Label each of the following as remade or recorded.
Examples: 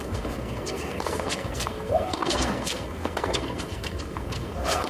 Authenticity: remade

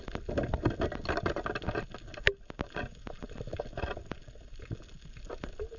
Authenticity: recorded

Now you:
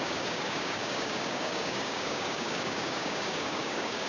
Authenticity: remade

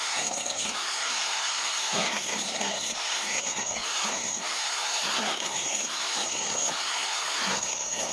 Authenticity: remade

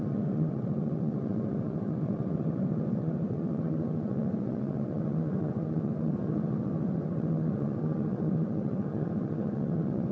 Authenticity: remade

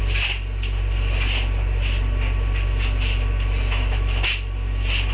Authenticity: recorded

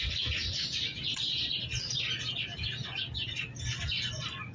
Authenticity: recorded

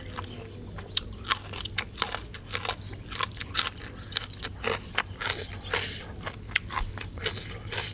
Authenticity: recorded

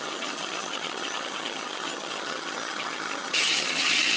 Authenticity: remade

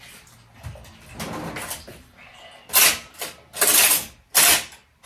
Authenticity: recorded